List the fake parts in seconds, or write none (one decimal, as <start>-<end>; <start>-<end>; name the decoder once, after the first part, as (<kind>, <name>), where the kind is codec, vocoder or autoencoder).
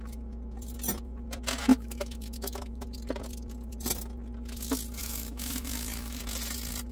1.7-2.8 (autoencoder, DAC-VAE); 5.0-6.2